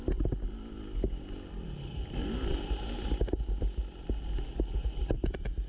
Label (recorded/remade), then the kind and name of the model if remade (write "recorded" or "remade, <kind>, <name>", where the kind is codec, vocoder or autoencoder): recorded